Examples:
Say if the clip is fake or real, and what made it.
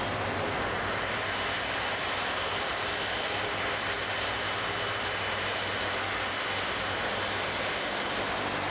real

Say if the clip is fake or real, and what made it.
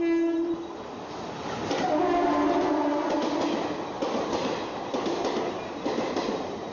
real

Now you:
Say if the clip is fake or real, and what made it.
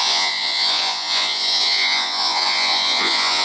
fake, vocoder, Vocos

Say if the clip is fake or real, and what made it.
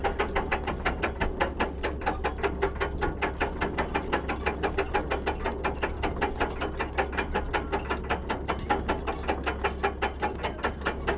real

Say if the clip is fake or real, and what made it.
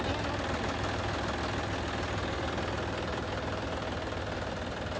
real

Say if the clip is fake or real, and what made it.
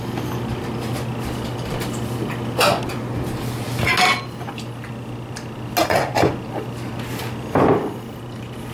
real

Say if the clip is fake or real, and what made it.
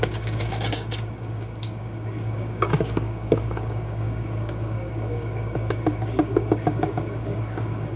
fake, codec, DAC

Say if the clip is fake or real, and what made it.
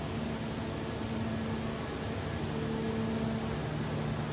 real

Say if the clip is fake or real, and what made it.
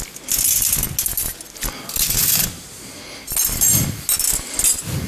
real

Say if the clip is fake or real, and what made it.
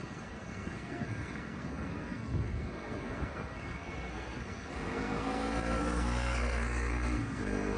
fake, codec, SNAC